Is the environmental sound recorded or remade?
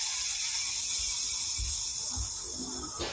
recorded